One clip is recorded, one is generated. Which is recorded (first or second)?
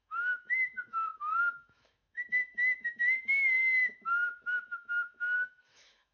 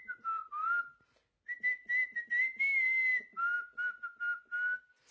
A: second